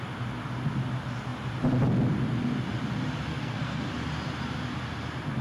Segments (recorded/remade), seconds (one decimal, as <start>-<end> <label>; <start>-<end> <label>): 0.0-3.3 recorded; 3.3-3.8 remade; 3.8-5.4 recorded